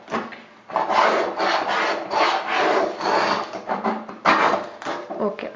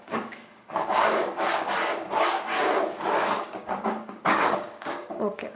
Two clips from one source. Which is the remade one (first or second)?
second